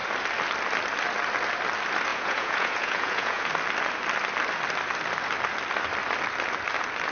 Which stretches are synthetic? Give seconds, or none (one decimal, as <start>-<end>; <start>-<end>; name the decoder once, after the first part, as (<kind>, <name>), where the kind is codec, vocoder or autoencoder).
2.1-3.5 (vocoder, Vocos)